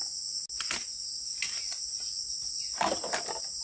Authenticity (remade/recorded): recorded